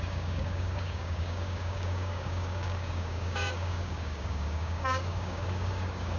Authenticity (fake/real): fake